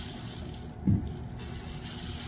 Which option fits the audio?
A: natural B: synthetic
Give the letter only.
A